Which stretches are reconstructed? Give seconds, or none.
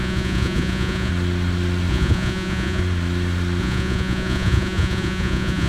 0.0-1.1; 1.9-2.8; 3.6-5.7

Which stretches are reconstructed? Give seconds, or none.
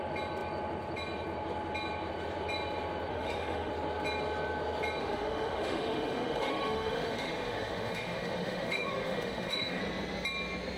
3.1-3.7; 5.0-9.8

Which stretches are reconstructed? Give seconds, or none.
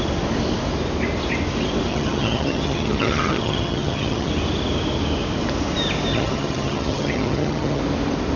1.9-4.3; 6.1-7.8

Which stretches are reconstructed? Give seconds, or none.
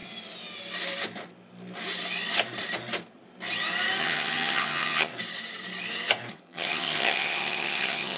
4.0-5.1; 6.3-8.2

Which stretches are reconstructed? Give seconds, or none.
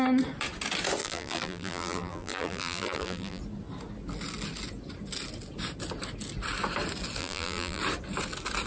1.0-3.4; 7.2-7.8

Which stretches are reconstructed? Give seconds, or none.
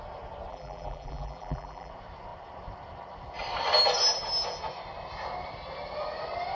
0.5-1.9